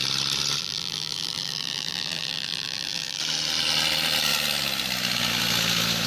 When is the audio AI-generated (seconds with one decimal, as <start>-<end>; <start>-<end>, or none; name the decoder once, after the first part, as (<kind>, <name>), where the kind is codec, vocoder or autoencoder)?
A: 0.6-3.2 (vocoder, BigVGAN v2)